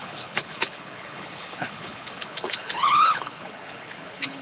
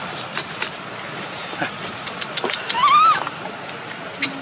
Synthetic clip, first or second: first